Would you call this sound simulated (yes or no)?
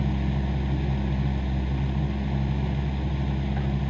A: no